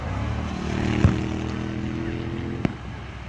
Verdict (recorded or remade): recorded